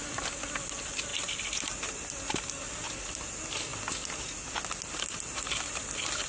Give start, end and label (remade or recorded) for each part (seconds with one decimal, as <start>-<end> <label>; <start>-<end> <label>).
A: 0.0-6.3 recorded